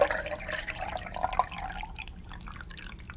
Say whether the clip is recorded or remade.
recorded